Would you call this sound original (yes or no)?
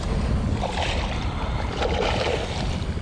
yes